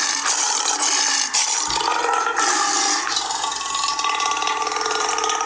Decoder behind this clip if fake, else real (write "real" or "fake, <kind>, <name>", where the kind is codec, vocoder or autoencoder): real